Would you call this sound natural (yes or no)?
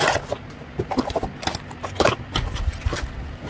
yes